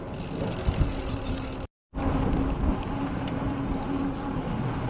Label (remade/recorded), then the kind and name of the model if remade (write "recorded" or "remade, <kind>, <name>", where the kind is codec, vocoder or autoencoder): recorded